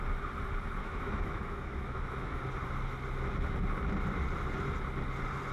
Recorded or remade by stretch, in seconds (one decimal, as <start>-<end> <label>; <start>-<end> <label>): 0.0-0.8 recorded; 0.8-2.4 remade; 2.4-5.5 recorded